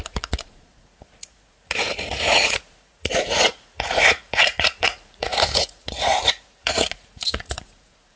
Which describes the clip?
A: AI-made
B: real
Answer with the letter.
A